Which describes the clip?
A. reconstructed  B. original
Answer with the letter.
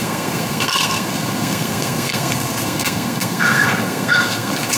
A